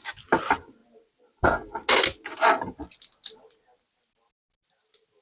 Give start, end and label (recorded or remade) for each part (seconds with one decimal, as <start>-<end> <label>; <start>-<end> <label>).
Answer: 0.0-5.2 recorded